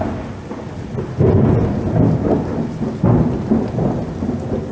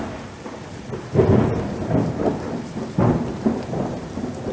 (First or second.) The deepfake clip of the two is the second